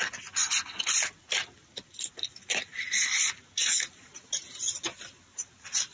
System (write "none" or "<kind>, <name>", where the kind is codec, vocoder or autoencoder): none